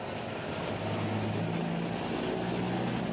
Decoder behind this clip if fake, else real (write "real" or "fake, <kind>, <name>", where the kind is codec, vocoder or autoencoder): real